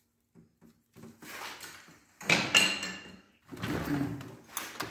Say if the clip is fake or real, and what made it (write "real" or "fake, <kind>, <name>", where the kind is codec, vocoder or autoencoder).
real